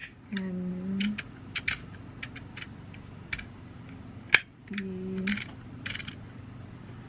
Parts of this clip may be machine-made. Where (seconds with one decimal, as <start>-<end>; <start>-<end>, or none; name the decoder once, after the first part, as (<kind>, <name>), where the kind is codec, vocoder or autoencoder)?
none